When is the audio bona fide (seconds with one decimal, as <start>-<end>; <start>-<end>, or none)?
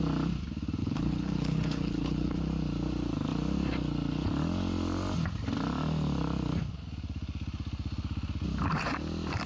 0.0-0.8; 2.4-9.5